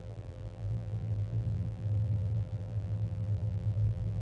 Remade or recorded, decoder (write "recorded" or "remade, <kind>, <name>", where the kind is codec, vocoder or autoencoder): remade, vocoder, BigVGAN v2